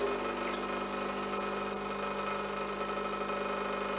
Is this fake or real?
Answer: real